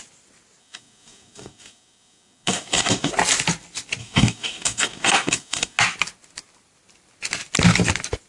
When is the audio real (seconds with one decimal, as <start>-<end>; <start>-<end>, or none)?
0.0-0.6; 3.1-4.0; 5.8-8.3